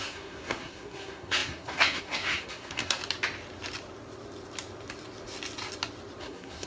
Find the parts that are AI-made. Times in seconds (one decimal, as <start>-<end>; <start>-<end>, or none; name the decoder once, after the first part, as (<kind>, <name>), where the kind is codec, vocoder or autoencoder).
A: 0.0-3.0 (codec, SNAC); 6.2-6.7